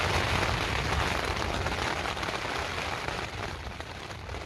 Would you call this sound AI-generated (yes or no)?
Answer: no